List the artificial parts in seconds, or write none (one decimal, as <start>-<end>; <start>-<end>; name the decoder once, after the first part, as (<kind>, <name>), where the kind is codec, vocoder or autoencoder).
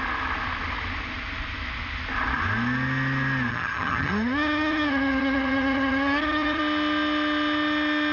3.5-6.6 (vocoder, HiFi-GAN)